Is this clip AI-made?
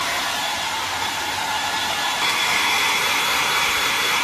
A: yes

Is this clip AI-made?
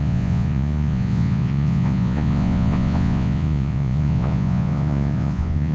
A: yes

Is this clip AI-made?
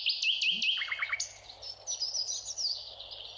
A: no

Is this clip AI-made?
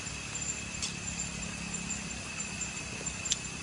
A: no